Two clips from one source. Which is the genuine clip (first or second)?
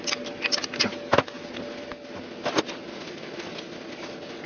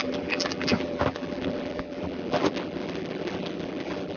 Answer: first